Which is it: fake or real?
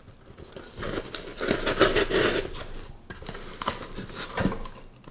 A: real